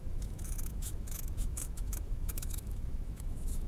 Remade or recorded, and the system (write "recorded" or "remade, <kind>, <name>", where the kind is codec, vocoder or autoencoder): remade, autoencoder, DAC-VAE